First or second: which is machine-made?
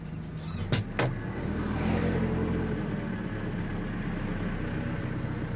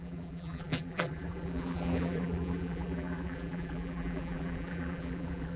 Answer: second